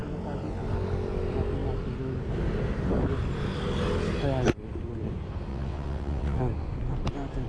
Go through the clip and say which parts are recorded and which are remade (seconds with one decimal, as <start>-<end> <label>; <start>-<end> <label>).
0.0-5.5 recorded; 5.5-6.4 remade; 6.4-7.5 recorded